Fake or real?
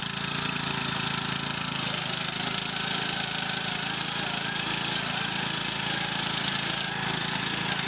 real